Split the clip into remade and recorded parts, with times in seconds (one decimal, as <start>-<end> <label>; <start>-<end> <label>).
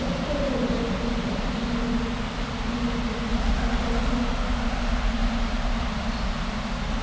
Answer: 0.0-5.2 recorded; 5.2-6.0 remade; 6.0-7.0 recorded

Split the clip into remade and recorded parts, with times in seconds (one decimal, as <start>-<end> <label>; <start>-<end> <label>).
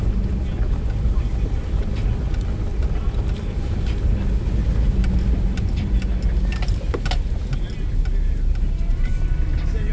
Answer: 0.0-9.9 recorded